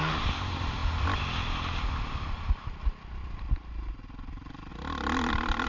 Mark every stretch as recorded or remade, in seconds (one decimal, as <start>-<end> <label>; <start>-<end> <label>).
0.0-5.7 recorded